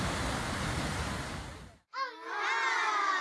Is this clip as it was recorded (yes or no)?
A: yes